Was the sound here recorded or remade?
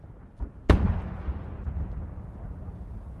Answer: recorded